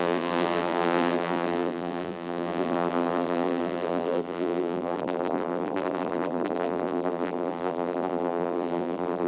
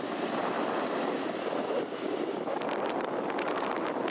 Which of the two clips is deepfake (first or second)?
first